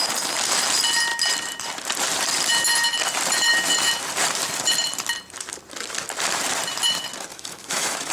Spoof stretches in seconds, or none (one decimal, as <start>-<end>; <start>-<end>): 7.3-8.1